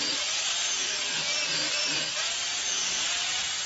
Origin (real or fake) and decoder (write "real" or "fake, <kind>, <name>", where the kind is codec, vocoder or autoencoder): real